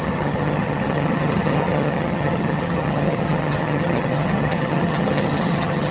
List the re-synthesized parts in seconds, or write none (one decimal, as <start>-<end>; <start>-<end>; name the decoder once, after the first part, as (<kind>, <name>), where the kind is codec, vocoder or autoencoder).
0.0-5.9 (vocoder, HiFi-GAN)

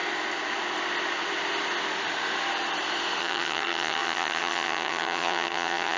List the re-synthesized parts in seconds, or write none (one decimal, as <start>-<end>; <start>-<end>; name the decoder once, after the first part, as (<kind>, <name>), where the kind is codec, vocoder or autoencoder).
3.2-6.0 (vocoder, HiFi-GAN)